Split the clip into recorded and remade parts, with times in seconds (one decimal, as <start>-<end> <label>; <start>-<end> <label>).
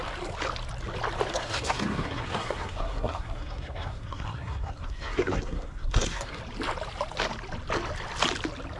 0.0-1.3 recorded; 1.3-6.4 remade; 6.4-8.8 recorded